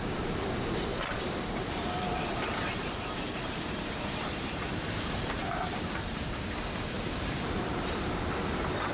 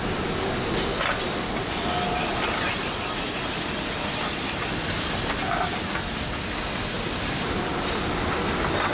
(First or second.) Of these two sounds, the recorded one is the second